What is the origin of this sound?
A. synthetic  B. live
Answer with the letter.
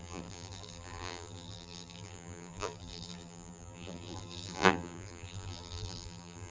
A